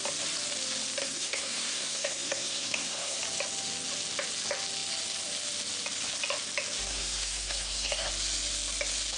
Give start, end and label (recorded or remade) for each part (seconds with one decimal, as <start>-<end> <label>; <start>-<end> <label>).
0.0-1.0 recorded; 1.0-3.2 remade; 3.2-6.9 recorded; 6.9-8.1 remade; 8.1-9.2 recorded